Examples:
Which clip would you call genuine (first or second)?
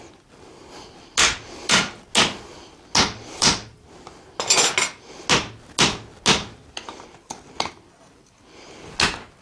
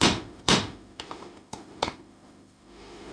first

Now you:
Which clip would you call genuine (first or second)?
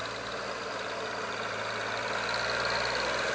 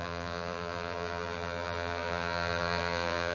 first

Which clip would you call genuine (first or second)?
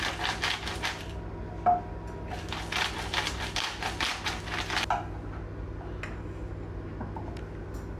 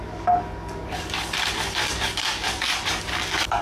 first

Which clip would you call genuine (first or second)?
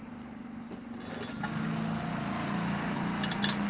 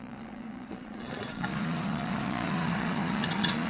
first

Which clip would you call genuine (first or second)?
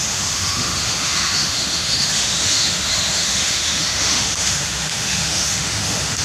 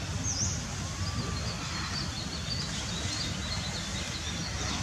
second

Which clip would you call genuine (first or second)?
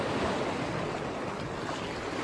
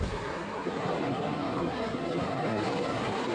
first